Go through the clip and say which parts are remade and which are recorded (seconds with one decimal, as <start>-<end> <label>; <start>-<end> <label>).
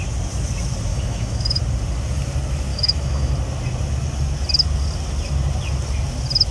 0.0-0.9 recorded; 0.9-1.6 remade; 1.6-2.7 recorded; 2.7-3.3 remade; 3.3-6.5 recorded